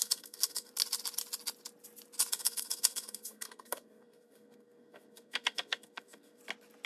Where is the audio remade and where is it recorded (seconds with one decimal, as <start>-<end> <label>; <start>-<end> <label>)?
0.0-0.7 remade; 0.7-2.3 recorded; 2.3-6.4 remade; 6.4-6.9 recorded